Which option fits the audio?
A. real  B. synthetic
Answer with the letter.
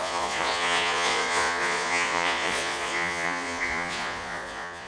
B